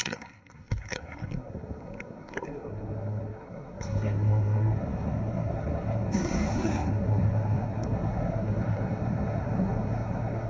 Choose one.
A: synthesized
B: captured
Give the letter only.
A